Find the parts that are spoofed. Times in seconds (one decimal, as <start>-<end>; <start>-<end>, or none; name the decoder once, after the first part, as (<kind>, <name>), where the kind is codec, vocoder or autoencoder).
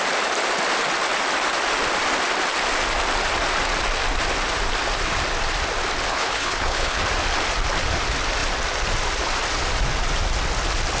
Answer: 6.1-7.0 (codec, HILCodec)